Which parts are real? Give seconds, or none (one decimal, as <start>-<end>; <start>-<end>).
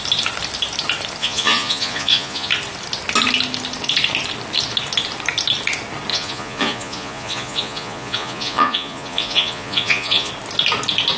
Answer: 0.0-1.2; 2.5-6.1; 10.3-11.2